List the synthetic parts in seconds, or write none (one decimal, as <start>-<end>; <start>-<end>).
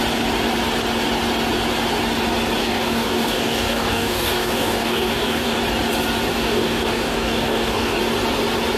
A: 2.6-5.6; 6.3-8.0